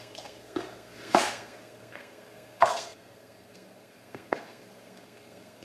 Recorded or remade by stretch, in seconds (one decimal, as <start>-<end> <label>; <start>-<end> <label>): 0.0-5.6 remade

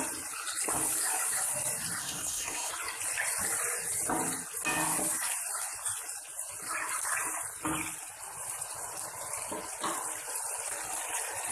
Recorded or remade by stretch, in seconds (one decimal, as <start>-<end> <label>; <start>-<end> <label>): 0.0-2.0 recorded; 2.0-2.7 remade; 2.7-11.5 recorded